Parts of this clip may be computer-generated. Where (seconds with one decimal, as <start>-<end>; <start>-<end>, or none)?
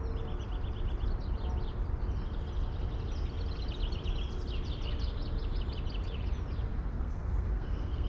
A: 6.7-8.1